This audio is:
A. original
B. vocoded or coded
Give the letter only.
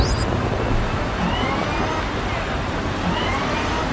A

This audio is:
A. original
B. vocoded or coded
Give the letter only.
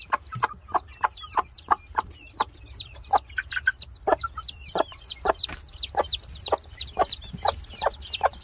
A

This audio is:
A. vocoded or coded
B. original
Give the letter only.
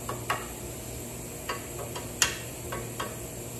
B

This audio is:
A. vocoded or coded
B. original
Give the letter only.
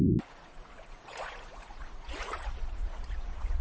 A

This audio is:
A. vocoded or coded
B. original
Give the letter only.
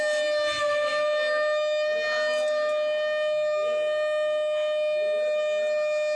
B